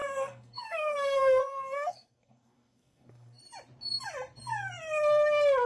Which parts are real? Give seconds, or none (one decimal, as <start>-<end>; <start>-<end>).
3.4-5.7